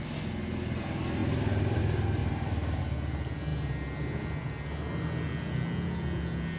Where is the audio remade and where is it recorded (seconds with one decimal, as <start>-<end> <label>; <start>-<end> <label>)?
0.0-1.2 recorded; 1.2-1.8 remade; 1.8-2.2 recorded; 2.2-2.8 remade; 2.8-6.6 recorded